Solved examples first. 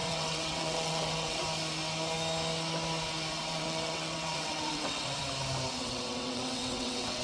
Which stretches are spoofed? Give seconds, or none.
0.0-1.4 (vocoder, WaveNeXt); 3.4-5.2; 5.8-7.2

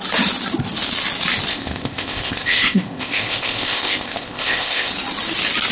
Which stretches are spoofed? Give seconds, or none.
1.5-4.9 (codec, ZipCodec)

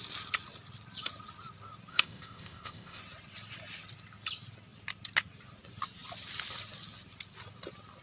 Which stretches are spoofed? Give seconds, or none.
1.9-3.0 (codec, ZipCodec)

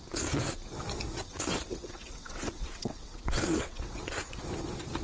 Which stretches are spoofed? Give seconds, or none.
1.2-4.1 (vocoder, WaveNeXt)

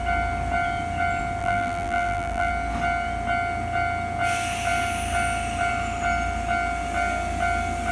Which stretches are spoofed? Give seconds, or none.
1.4-2.5 (vocoder, BigVGAN v2)

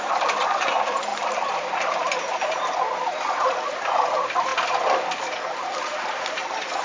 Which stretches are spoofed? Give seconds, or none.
1.1-1.6 (vocoder, BigVGAN v2)